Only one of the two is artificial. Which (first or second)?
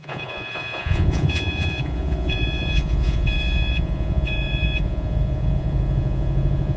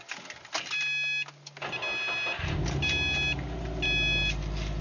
first